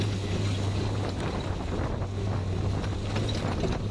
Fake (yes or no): no